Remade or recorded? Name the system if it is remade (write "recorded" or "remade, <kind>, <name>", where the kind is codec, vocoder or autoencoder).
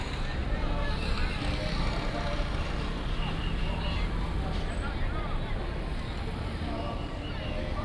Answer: recorded